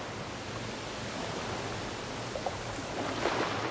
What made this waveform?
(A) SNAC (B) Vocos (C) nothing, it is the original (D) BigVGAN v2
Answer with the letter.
C